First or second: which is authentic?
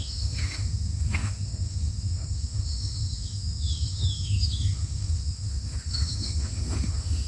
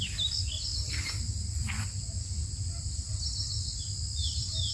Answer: second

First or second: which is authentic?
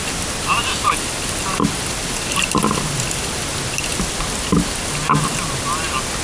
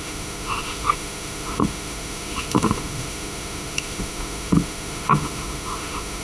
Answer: first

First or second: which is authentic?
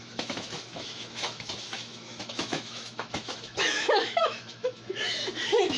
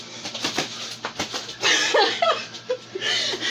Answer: second